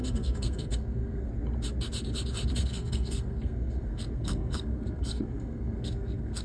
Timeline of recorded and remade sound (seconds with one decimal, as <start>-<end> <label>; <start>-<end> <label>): 0.0-1.3 remade; 1.3-2.5 recorded; 2.5-6.4 remade

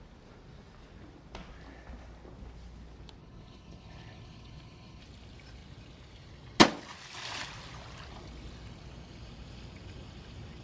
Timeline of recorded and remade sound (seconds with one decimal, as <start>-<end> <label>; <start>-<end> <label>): 0.0-3.2 recorded; 3.2-5.0 remade; 5.0-10.6 recorded

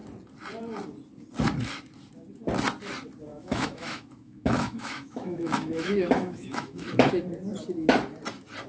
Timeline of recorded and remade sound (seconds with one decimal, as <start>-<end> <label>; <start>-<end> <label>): 0.0-3.3 recorded; 3.3-7.1 remade; 7.1-8.7 recorded

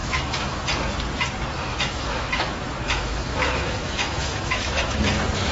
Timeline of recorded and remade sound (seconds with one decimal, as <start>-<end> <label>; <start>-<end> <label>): 0.0-0.6 remade; 0.6-1.7 recorded; 1.7-5.0 remade; 5.0-5.5 recorded

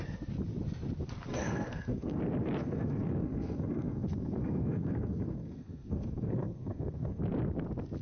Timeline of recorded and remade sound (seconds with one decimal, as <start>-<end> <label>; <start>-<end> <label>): 0.0-1.4 recorded; 1.4-2.2 remade; 2.2-2.6 recorded; 2.6-7.2 remade; 7.2-8.0 recorded

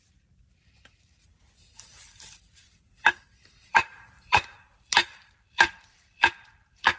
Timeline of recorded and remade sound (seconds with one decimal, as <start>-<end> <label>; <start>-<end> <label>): 0.0-7.0 remade

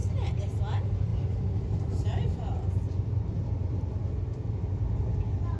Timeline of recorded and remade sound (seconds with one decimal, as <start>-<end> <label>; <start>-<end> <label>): 0.0-0.6 remade; 0.6-1.1 recorded; 1.1-4.5 remade; 4.5-5.6 recorded